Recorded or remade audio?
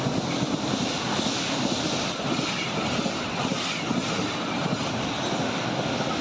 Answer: recorded